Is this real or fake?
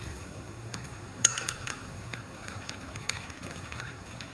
fake